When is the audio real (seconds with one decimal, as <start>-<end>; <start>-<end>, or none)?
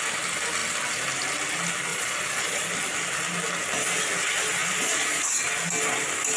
0.0-1.9; 2.7-4.6; 5.2-6.4